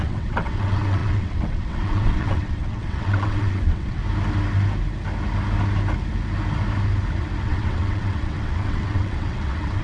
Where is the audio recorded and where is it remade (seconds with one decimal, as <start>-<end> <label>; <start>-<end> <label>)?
0.0-4.0 remade; 4.0-7.4 recorded; 7.4-9.8 remade